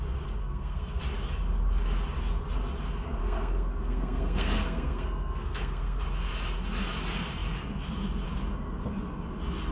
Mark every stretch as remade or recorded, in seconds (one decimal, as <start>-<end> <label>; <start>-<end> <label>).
0.0-0.4 recorded; 0.4-1.0 remade; 1.0-3.2 recorded; 3.2-6.0 remade; 6.0-9.7 recorded